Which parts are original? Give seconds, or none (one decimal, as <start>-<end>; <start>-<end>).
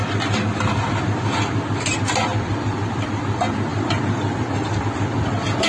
0.0-2.3; 3.3-3.7; 4.8-5.7